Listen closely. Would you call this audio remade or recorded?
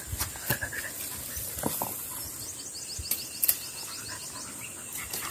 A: recorded